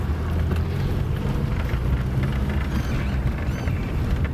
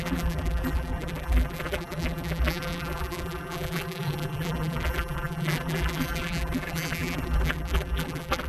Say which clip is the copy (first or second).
second